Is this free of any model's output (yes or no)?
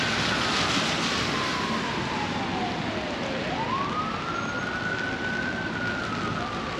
yes